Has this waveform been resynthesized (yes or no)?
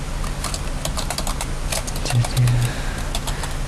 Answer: no